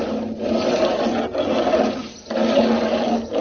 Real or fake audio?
real